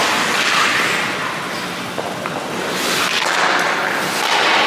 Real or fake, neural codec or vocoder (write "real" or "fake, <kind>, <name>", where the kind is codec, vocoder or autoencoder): real